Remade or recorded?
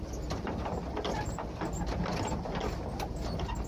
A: recorded